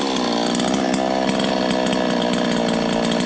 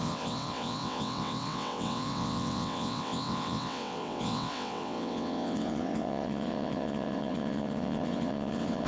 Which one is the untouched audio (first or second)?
first